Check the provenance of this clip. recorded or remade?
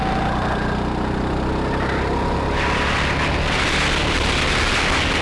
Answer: recorded